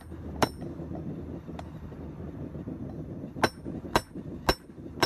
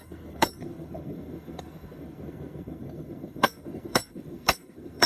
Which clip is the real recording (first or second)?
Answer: first